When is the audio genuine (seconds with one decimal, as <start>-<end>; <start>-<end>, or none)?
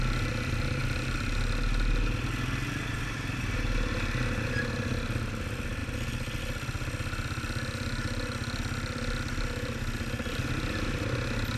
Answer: 0.0-11.6